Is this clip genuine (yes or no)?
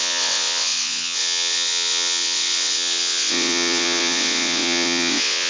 no